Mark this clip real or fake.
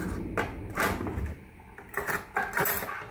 real